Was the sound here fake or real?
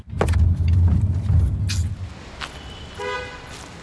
real